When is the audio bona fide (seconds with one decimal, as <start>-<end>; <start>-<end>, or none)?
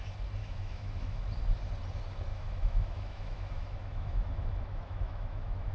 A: 0.0-0.4; 1.2-2.3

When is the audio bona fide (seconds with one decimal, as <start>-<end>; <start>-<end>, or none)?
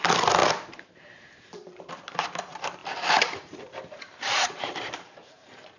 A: 0.0-0.4; 1.9-2.8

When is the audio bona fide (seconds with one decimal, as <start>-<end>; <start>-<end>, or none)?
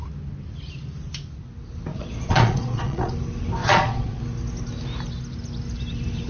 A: 0.0-1.9; 3.1-3.6; 4.2-6.3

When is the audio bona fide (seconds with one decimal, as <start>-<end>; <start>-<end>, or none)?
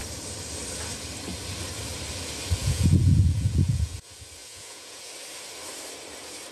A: 0.0-2.6; 4.0-4.4; 5.1-6.5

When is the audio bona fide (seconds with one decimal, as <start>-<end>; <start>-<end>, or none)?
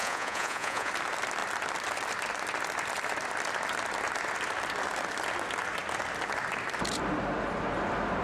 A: 0.9-8.2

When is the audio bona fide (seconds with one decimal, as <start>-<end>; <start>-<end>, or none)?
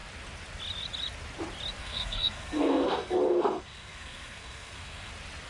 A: 0.0-1.8; 5.1-5.5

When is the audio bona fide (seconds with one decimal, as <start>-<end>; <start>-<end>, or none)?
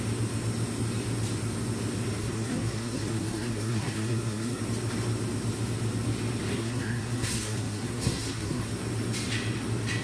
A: 0.0-2.2; 4.6-6.5; 8.7-10.0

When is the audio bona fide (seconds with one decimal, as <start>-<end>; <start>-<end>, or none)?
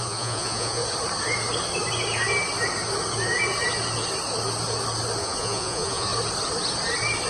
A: 0.8-5.2; 6.1-7.3